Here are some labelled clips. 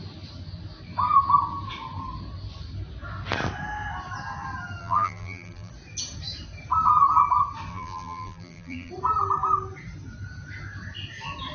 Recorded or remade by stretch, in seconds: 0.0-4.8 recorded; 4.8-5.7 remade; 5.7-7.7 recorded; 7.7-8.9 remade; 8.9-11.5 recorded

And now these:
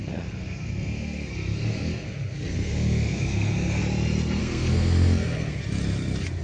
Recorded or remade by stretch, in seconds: 0.0-3.8 remade; 3.8-4.4 recorded; 4.4-5.6 remade; 5.6-6.4 recorded

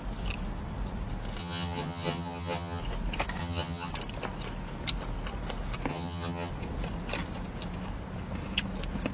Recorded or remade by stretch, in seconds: 0.0-1.4 recorded; 1.4-2.8 remade; 2.8-3.4 recorded; 3.4-3.9 remade; 3.9-5.9 recorded; 5.9-6.5 remade; 6.5-9.1 recorded

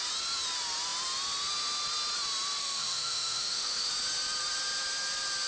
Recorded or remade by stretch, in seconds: 0.0-2.6 recorded; 2.6-3.9 remade; 3.9-5.5 recorded

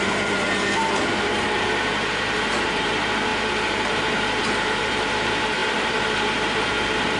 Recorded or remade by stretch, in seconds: 0.0-7.2 remade